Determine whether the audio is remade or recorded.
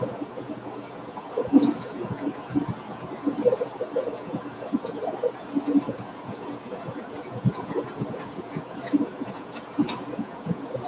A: remade